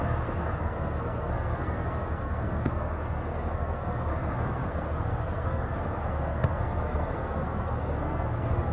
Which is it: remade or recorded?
remade